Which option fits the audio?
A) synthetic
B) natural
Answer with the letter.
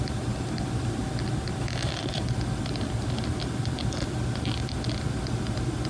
B